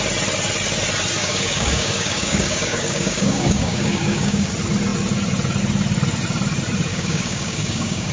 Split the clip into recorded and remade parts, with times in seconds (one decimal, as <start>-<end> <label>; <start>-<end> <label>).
0.0-1.2 recorded; 1.2-4.5 remade; 4.5-6.9 recorded; 6.9-8.1 remade